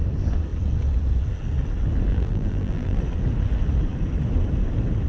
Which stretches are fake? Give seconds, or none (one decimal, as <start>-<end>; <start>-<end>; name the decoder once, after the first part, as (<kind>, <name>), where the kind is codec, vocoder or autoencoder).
2.1-3.0 (vocoder, BigVGAN v2)